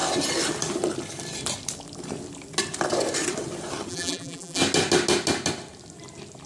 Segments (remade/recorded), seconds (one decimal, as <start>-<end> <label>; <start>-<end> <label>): 0.0-3.9 recorded; 3.9-4.6 remade; 4.6-6.5 recorded